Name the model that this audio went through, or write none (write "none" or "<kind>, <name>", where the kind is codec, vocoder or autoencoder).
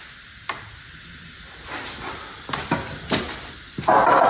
none